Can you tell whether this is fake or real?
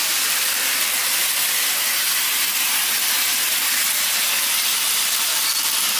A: real